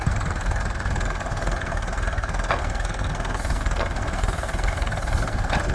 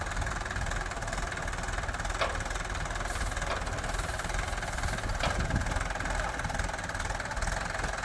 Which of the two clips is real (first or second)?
second